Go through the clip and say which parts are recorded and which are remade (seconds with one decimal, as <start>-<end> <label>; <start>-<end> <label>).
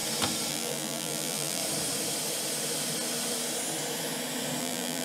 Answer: 0.0-0.5 recorded; 0.5-1.6 remade; 1.6-4.6 recorded; 4.6-5.0 remade